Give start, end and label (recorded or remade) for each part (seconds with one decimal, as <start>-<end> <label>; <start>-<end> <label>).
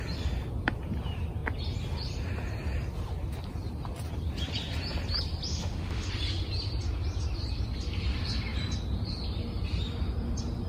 0.0-5.5 recorded; 5.5-6.1 remade; 6.1-10.7 recorded